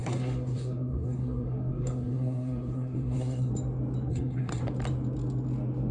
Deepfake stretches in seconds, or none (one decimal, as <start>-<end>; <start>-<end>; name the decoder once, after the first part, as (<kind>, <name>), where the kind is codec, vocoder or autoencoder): 0.0-3.5 (codec, SNAC); 4.1-4.6